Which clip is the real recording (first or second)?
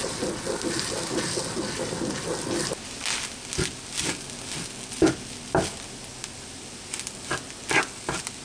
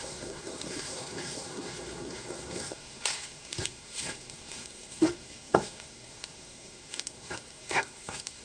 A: first